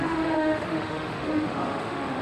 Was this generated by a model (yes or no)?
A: yes